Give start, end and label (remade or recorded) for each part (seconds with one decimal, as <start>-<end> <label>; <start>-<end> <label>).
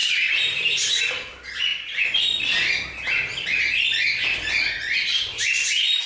0.0-0.9 remade; 0.9-6.1 recorded